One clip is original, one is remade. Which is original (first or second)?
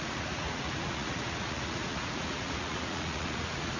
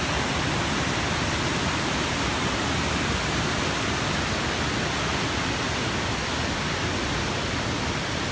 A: second